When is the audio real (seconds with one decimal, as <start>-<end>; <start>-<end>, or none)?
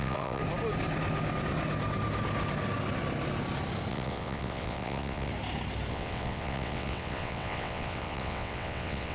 0.4-3.9; 5.3-5.9